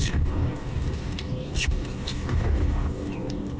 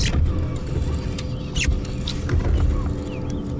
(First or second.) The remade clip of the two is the first